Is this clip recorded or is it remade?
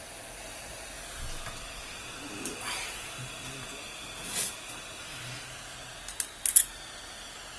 recorded